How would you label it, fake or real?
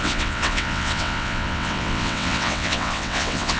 fake